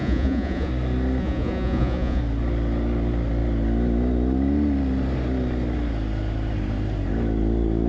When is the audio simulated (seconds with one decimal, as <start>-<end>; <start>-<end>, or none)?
0.0-0.7; 1.2-2.2